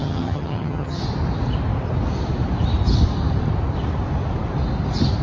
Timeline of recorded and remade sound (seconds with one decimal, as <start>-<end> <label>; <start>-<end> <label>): 0.0-1.0 remade; 1.0-5.2 recorded